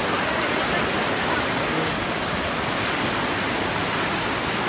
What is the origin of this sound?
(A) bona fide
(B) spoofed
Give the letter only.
A